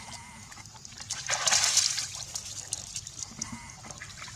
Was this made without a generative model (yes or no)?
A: yes